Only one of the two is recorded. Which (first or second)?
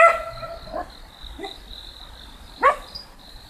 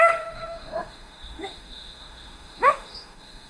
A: first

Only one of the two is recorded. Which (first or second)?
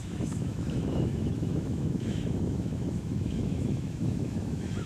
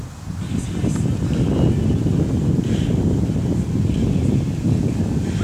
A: second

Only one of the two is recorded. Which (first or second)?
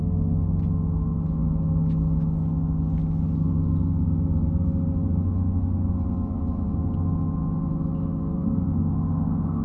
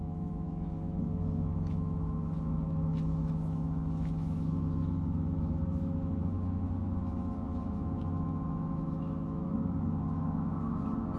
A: first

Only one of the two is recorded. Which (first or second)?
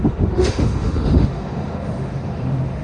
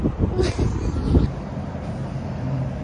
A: second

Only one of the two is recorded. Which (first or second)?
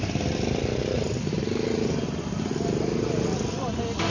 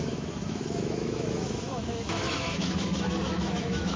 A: first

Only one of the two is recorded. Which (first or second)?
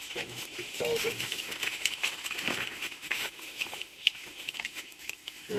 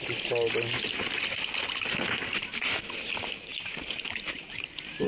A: second